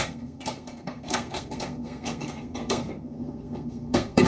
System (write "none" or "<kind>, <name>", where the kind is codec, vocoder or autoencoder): codec, SNAC